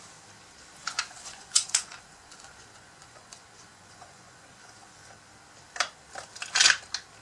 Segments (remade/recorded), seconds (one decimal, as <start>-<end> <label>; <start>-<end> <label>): 0.0-0.8 recorded; 0.8-5.1 remade; 5.1-7.2 recorded